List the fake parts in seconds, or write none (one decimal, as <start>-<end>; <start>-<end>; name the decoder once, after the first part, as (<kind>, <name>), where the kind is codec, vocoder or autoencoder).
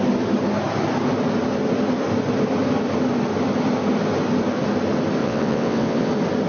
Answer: 5.2-6.1 (vocoder, WaveNeXt)